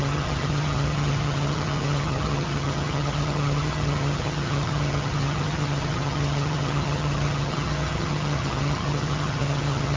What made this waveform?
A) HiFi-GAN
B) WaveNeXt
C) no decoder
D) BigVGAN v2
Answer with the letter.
A